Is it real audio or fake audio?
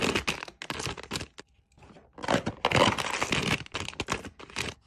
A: real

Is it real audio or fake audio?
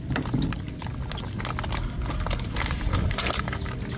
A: real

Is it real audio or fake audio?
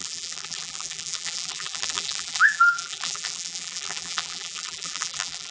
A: fake